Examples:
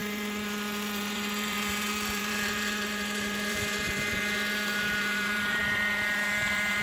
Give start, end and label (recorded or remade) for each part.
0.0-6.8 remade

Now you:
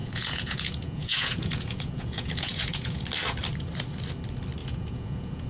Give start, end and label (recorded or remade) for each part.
0.0-3.0 remade; 3.0-4.6 recorded; 4.6-5.5 remade

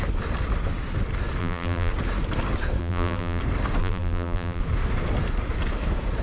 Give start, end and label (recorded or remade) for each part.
0.0-1.4 recorded; 1.4-1.9 remade; 1.9-2.8 recorded; 2.8-3.4 remade; 3.4-3.8 recorded; 3.8-4.6 remade; 4.6-6.2 recorded